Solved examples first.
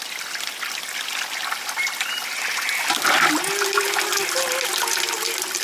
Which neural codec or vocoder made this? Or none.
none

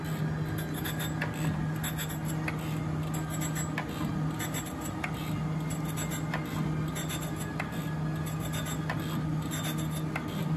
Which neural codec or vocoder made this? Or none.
none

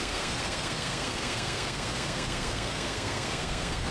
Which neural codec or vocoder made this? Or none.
codec, SNAC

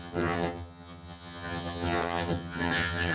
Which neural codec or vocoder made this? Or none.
vocoder, HiFi-GAN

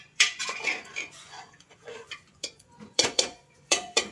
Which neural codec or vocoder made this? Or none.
vocoder, Vocos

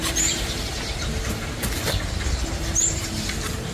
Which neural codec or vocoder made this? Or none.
vocoder, BigVGAN v2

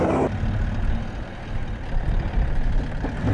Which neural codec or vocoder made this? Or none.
none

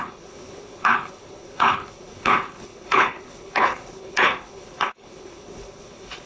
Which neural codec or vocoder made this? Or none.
codec, HILCodec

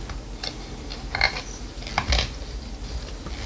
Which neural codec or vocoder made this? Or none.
none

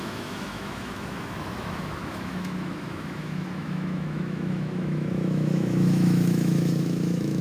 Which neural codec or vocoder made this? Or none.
autoencoder, DAC-VAE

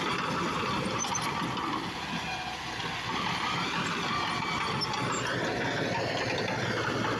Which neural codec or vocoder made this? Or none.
none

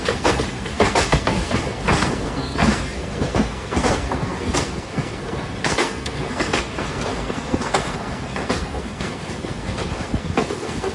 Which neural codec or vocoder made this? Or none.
codec, SNAC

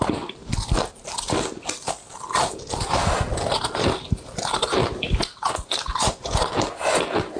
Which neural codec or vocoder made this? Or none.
none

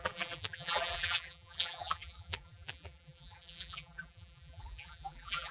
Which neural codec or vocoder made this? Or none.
vocoder, BigVGAN v2